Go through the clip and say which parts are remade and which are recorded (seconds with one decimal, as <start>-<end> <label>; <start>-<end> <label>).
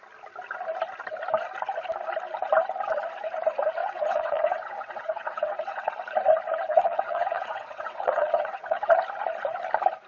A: 0.0-3.8 recorded; 3.8-5.9 remade; 5.9-6.7 recorded; 6.7-8.9 remade; 8.9-10.1 recorded